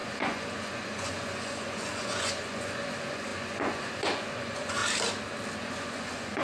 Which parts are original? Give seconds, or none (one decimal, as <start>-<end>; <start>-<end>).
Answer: 4.8-5.6